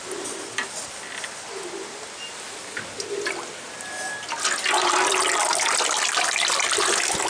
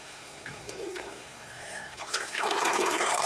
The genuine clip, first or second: first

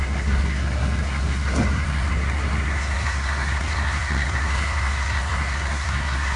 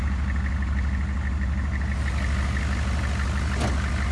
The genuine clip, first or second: second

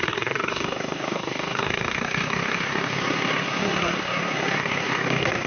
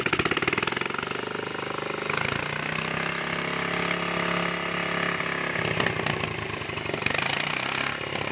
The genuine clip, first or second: second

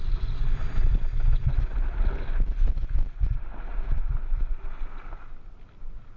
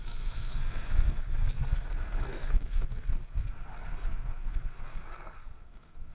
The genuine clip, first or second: first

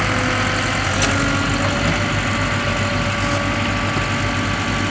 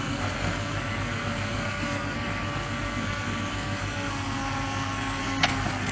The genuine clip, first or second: first